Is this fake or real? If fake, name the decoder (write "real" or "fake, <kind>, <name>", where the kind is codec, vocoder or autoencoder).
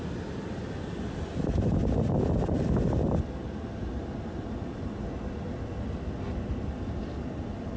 real